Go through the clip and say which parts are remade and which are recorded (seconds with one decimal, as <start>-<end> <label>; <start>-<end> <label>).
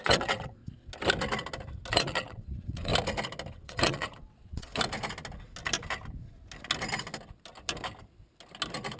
0.0-0.6 remade; 0.6-1.9 recorded; 1.9-2.9 remade; 2.9-3.5 recorded; 3.5-4.7 remade; 4.7-9.0 recorded